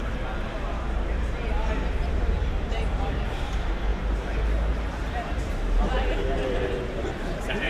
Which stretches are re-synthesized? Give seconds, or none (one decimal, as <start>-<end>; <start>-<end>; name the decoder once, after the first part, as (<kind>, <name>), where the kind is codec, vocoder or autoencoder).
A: 0.0-3.9 (vocoder, BigVGAN v2); 4.7-7.7